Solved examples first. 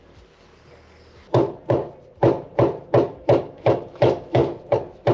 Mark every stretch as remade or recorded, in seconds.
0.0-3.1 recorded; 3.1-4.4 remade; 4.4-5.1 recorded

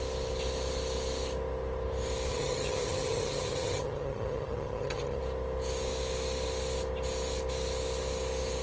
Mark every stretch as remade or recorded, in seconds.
0.0-2.3 recorded; 2.3-5.2 remade; 5.2-8.6 recorded